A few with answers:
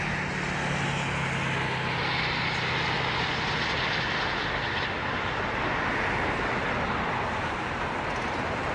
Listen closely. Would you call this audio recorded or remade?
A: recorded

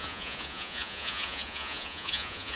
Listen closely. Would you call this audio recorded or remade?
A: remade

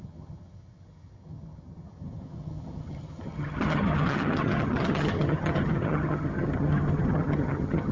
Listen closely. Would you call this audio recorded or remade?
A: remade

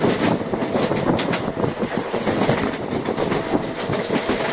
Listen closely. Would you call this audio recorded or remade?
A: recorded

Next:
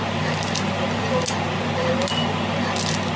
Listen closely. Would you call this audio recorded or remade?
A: recorded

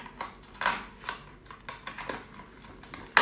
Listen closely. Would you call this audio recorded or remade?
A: recorded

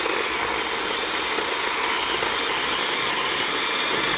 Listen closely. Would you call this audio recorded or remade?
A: recorded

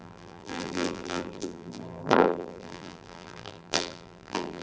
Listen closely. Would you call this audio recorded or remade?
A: remade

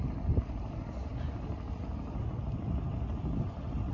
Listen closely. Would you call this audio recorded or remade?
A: recorded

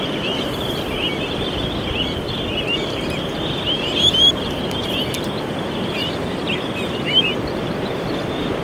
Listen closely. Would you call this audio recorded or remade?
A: remade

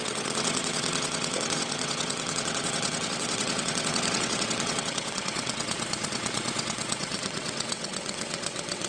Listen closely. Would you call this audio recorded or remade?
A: remade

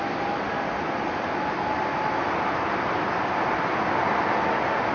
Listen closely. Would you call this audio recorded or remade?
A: recorded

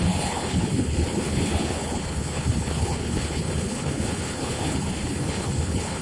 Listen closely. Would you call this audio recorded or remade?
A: remade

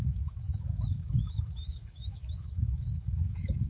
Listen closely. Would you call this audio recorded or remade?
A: remade